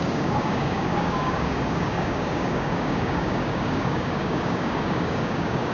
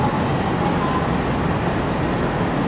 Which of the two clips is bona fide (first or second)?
second